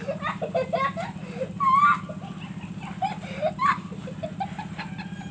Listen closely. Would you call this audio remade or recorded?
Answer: recorded